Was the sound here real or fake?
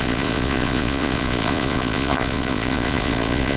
fake